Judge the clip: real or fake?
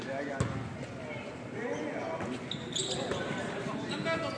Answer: real